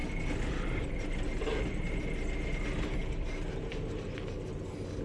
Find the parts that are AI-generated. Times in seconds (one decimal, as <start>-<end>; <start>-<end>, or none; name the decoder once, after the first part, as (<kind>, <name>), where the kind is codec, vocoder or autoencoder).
none